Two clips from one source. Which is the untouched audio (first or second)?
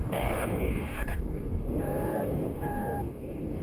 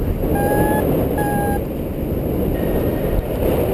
second